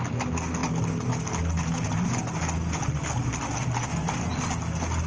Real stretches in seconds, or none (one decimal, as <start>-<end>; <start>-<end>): 0.0-5.1